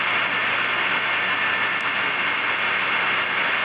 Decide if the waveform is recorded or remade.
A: recorded